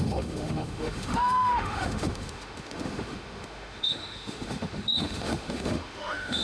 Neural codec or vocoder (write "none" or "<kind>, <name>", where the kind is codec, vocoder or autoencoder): autoencoder, DAC-VAE